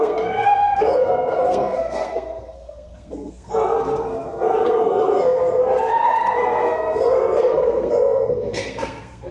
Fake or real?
fake